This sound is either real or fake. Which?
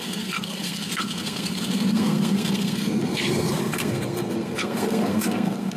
fake